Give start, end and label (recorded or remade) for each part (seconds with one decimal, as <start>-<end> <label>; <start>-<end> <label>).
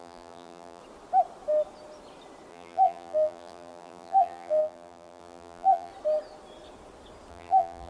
0.0-0.8 remade; 0.8-2.5 recorded; 2.5-5.9 remade; 5.9-7.3 recorded; 7.3-7.9 remade